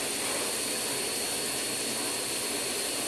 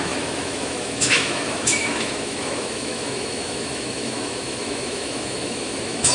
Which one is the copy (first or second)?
second